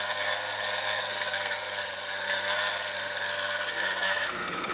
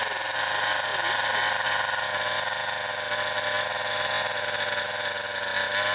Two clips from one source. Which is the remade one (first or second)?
first